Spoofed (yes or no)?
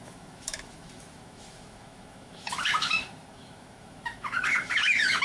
yes